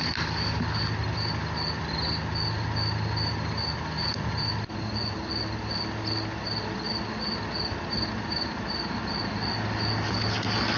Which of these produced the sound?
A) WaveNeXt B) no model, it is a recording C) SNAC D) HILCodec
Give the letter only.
B